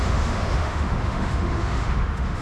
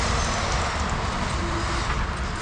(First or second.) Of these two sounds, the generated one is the first